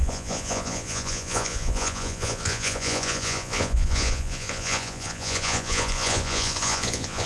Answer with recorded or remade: remade